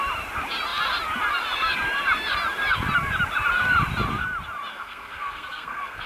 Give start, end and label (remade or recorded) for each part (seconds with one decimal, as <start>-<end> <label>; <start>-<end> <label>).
0.0-4.7 recorded; 4.7-6.1 remade